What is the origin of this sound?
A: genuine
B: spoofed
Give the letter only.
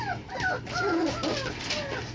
A